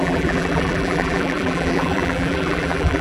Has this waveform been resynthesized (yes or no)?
yes